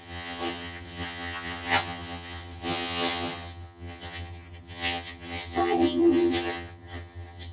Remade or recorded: remade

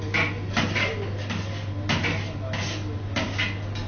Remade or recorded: recorded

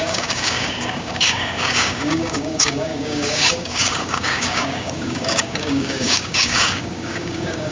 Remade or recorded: remade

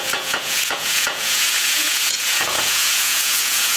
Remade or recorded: remade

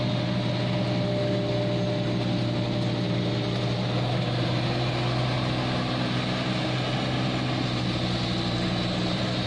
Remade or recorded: recorded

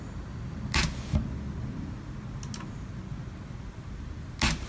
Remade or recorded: recorded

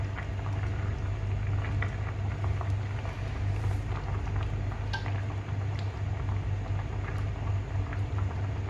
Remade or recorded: recorded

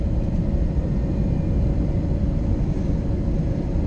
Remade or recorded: recorded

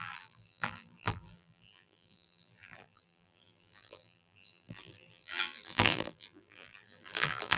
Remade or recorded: remade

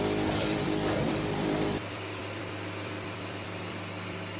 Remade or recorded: remade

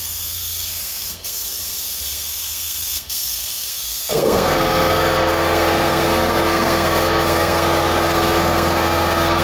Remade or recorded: remade